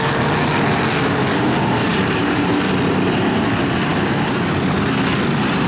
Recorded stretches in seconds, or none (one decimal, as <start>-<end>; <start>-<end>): 0.0-1.9; 2.7-5.7